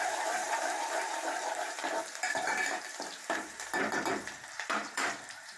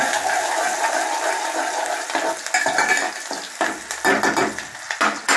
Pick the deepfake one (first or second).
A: first